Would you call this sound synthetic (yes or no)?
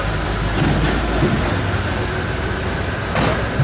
no